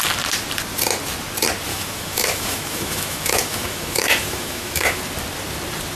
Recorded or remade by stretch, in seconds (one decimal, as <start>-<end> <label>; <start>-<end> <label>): 0.0-1.7 recorded; 1.7-5.0 remade; 5.0-5.9 recorded